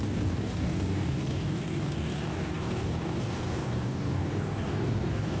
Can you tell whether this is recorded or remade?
remade